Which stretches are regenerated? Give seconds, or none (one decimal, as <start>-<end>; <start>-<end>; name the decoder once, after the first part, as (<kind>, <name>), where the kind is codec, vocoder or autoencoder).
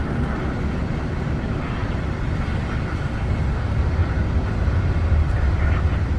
1.8-2.5 (vocoder, BigVGAN v2); 4.0-5.8